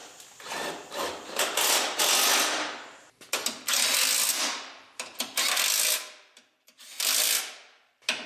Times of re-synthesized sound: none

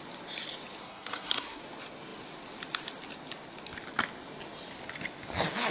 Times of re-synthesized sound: 0.8-1.6 (codec, SNAC)